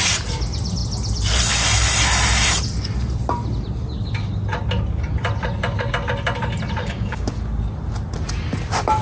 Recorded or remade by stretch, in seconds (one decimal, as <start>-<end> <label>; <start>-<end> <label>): 0.0-6.8 recorded; 6.8-7.3 remade; 7.3-9.0 recorded